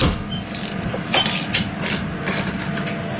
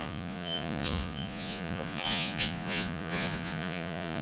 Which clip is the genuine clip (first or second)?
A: first